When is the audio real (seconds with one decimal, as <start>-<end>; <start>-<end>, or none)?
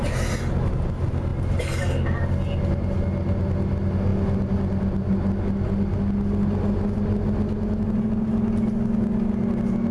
0.0-9.9